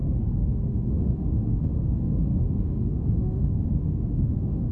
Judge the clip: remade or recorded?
remade